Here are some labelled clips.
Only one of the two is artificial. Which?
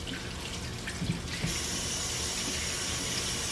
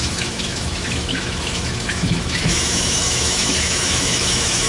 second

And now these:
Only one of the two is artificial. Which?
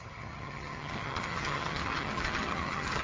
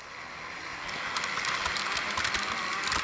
first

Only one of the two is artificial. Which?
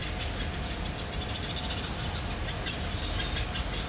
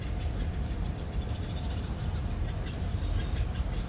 second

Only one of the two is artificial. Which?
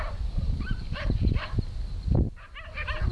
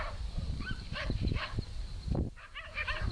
second